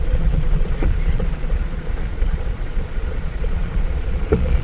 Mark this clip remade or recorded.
remade